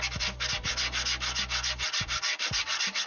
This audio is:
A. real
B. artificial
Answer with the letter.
A